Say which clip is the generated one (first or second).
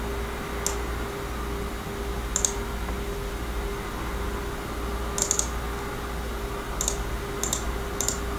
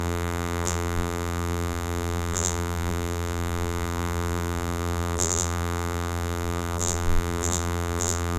second